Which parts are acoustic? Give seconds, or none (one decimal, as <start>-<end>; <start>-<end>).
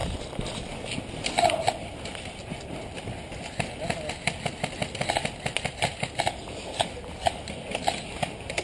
0.0-8.6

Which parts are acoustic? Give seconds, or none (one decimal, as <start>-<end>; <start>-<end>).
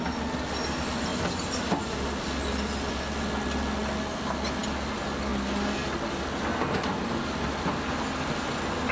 0.0-8.9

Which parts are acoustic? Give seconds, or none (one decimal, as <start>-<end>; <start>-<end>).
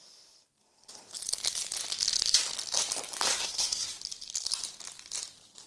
0.0-3.3; 3.9-5.7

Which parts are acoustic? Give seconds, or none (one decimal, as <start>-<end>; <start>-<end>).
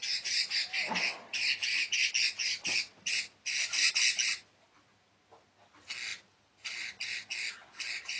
0.0-0.7; 3.9-6.1